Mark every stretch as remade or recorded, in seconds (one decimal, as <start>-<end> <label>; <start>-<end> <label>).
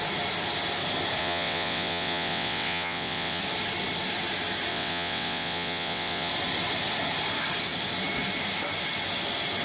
0.0-1.2 recorded; 1.2-3.4 remade; 3.4-4.7 recorded; 4.7-6.3 remade; 6.3-9.6 recorded